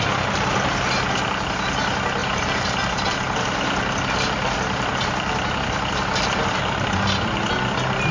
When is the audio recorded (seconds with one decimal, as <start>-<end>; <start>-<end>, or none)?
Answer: 0.0-2.2; 5.9-8.1